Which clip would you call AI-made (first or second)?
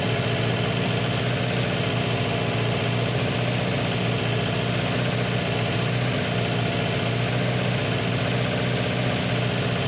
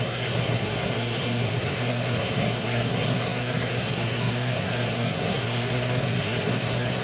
second